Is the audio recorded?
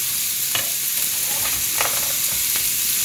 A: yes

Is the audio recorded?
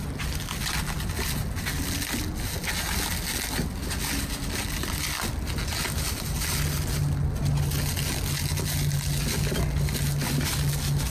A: yes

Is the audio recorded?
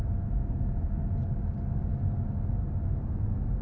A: yes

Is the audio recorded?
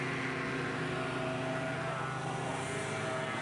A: yes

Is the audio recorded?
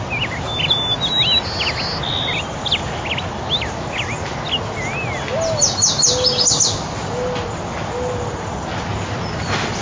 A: yes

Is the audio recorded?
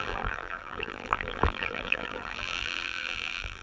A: no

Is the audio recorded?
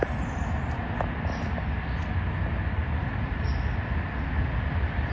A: yes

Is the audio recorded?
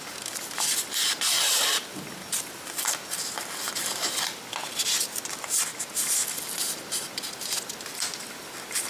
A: yes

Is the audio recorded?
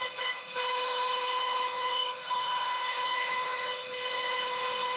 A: no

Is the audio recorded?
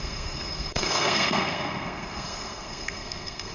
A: no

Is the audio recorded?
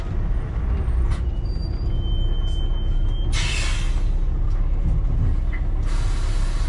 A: yes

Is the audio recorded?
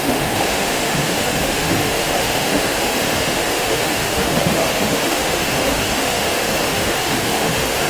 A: no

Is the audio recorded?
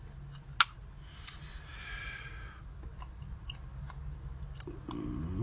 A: yes